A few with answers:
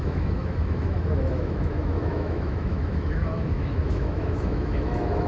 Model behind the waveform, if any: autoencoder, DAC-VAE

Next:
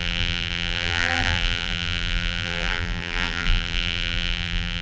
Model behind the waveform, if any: vocoder, BigVGAN v2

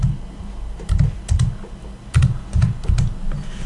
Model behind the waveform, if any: none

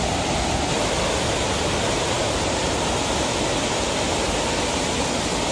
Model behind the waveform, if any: none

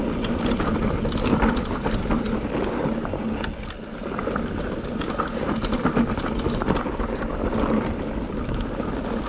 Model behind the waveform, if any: none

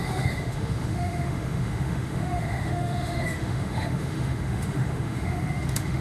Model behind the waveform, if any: autoencoder, DAC-VAE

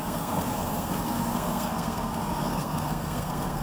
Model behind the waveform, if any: codec, SNAC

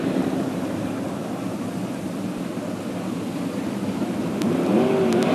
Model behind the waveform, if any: none